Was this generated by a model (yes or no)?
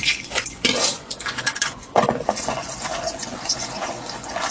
yes